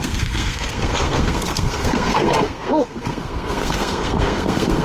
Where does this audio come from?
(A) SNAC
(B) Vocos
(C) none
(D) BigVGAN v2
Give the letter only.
A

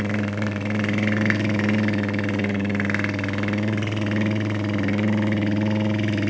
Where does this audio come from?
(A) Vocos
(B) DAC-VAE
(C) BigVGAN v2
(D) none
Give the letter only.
D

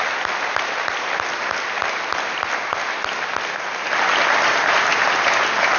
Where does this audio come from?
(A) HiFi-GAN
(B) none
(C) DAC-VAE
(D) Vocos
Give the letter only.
B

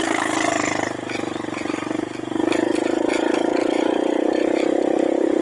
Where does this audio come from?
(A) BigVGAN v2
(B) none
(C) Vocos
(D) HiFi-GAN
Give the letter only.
B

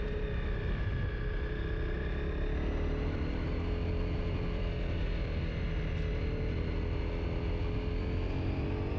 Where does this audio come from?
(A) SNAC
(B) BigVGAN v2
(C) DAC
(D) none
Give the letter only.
D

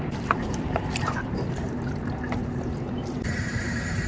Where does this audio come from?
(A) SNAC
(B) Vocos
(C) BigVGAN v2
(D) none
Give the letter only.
C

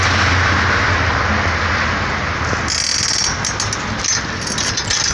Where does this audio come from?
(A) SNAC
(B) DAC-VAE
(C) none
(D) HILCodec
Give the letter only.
C